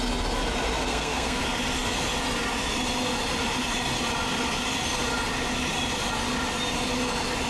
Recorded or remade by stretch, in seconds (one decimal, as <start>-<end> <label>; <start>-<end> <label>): 0.0-0.9 recorded; 0.9-1.4 remade; 1.4-7.5 recorded

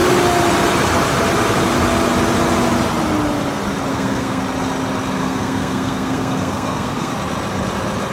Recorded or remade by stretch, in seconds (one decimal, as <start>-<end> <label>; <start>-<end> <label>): 0.0-3.9 recorded; 3.9-4.4 remade; 4.4-5.2 recorded; 5.2-7.1 remade; 7.1-8.1 recorded

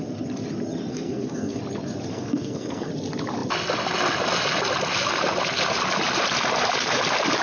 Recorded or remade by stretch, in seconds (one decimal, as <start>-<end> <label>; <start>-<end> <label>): 0.0-0.9 recorded; 0.9-1.6 remade; 1.6-2.1 recorded; 2.1-2.9 remade; 2.9-7.4 recorded

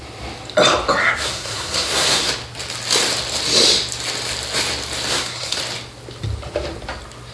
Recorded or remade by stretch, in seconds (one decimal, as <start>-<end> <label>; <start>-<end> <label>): 0.0-1.0 recorded; 1.0-2.3 remade; 2.3-5.1 recorded; 5.1-5.6 remade; 5.6-7.3 recorded

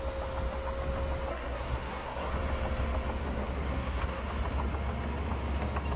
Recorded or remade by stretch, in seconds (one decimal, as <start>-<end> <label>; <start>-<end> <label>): 0.0-1.3 recorded; 1.3-2.3 remade; 2.3-3.2 recorded; 3.2-4.2 remade; 4.2-6.0 recorded

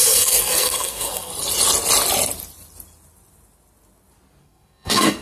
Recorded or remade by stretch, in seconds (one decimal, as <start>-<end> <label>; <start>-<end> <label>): 0.0-1.3 remade; 1.3-4.4 recorded; 4.4-5.2 remade

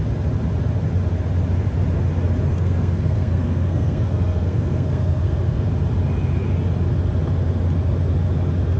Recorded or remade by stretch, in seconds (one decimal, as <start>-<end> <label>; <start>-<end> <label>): 0.0-2.5 recorded; 2.5-5.7 remade; 5.7-8.8 recorded